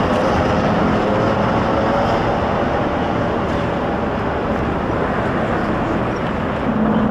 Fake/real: real